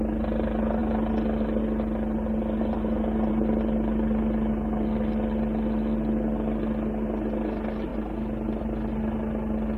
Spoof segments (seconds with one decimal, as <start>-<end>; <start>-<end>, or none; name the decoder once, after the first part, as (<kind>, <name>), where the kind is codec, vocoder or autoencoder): none